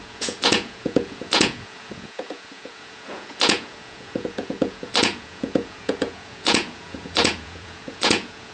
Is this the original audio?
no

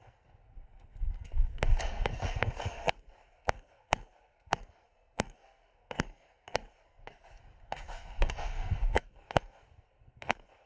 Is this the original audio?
no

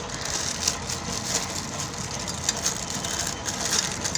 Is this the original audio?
yes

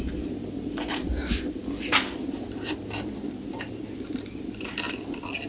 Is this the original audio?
yes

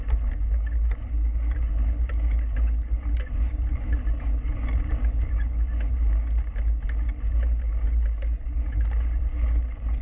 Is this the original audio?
yes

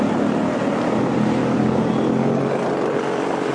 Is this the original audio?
yes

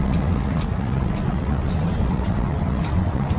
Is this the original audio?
no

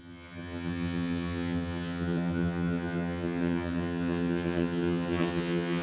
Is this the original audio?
no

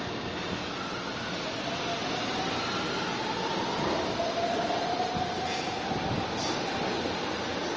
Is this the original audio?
yes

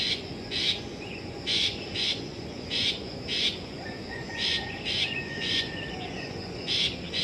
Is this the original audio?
no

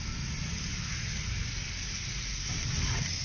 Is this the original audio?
yes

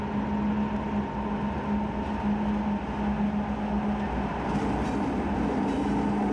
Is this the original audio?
yes